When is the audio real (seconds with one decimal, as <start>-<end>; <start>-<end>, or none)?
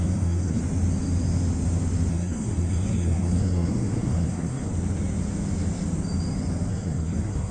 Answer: 0.6-2.1; 4.7-6.7